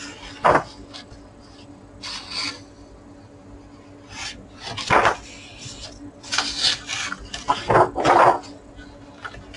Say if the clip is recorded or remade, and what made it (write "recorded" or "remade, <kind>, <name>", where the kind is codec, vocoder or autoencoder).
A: recorded